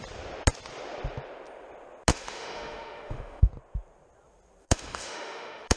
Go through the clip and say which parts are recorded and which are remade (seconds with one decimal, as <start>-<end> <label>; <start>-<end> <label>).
0.0-2.1 recorded; 2.1-3.5 remade; 3.5-4.6 recorded; 4.6-5.8 remade